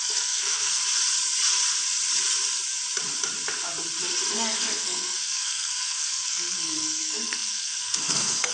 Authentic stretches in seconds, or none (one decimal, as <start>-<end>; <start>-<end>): 0.8-4.3